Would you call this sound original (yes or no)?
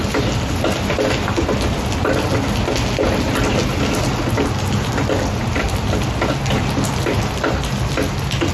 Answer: yes